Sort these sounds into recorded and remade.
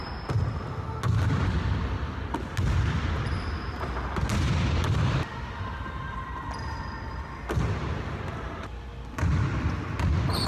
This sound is recorded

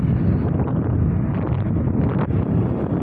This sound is recorded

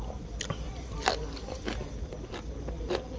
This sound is recorded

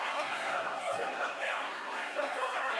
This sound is remade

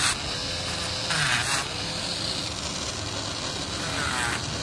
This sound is recorded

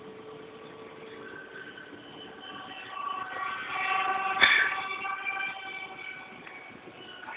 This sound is recorded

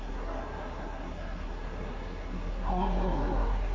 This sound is remade